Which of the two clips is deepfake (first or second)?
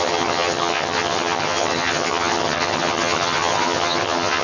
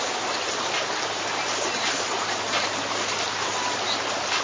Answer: first